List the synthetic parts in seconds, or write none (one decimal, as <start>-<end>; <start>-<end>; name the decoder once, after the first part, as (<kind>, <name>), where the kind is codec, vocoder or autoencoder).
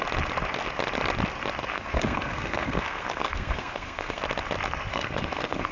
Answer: 1.7-4.2 (codec, SNAC); 4.9-5.7